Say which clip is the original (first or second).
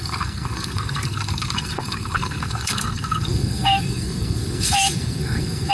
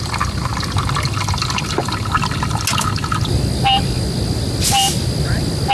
second